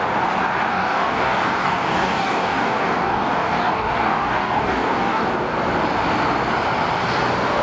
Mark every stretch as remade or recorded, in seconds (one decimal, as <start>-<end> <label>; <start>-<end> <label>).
0.0-0.7 recorded; 0.7-5.3 remade; 5.3-7.6 recorded